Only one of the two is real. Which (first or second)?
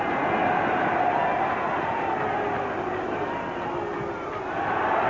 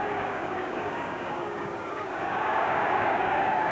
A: first